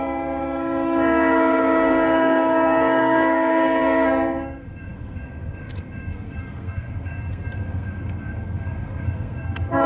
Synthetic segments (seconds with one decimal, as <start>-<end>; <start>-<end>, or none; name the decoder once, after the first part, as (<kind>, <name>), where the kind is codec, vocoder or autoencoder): 0.0-9.9 (codec, SNAC)

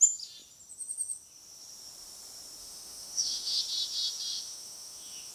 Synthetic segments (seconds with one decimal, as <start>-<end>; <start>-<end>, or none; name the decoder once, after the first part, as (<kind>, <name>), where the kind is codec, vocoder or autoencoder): 2.6-3.6 (autoencoder, DAC-VAE); 4.3-5.3

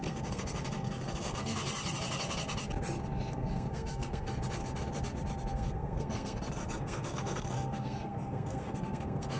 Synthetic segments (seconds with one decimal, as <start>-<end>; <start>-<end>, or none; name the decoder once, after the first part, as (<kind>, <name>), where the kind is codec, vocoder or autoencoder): 0.0-1.6 (codec, SNAC); 3.3-4.3; 5.5-9.4

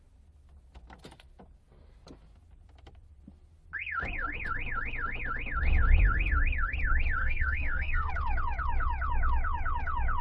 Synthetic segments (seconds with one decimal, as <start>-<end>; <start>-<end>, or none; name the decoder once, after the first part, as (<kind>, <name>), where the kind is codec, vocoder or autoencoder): 7.2-8.1 (codec, SNAC)

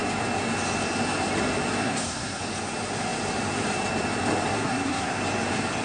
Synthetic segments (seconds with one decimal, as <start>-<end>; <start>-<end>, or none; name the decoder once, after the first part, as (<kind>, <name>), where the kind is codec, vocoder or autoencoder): 1.8-2.4 (codec, SNAC); 4.5-5.2

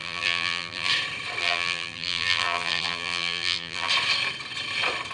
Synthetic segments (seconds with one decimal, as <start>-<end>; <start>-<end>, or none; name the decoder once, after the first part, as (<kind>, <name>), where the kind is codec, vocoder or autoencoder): 0.0-0.9 (vocoder, BigVGAN v2); 1.4-3.9